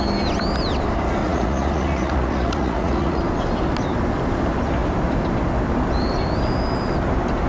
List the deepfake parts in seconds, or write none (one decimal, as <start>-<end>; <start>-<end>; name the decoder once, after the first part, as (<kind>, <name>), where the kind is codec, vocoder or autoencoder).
1.2-3.2 (vocoder, Vocos)